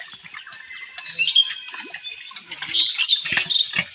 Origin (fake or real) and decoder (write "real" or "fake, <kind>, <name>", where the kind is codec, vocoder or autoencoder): real